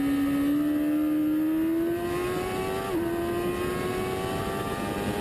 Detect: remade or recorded recorded